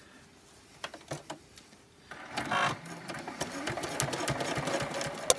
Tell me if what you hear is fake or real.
real